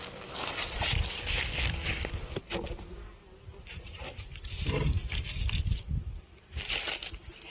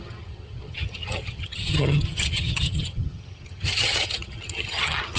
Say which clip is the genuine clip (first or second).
first